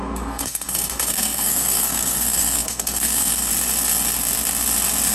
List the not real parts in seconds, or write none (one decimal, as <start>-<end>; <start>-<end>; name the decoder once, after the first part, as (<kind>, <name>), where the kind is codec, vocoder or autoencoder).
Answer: 0.0-3.5 (codec, SNAC)